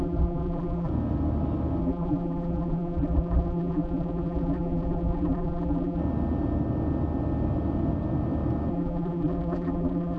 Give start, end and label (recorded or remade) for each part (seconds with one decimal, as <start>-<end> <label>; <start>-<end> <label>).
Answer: 0.0-0.9 remade; 0.9-1.8 recorded; 1.8-6.0 remade; 6.0-8.7 recorded; 8.7-10.2 remade